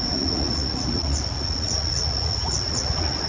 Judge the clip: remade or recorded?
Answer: remade